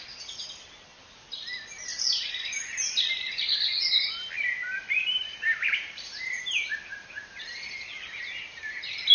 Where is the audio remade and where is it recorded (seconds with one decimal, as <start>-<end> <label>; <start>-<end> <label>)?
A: 0.0-0.9 recorded; 0.9-1.5 remade; 1.5-4.8 recorded; 4.8-8.7 remade; 8.7-9.1 recorded